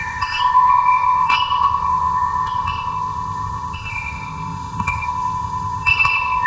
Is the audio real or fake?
fake